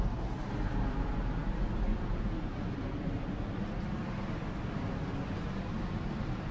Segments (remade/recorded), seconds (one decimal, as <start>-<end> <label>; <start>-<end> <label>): 0.0-6.5 recorded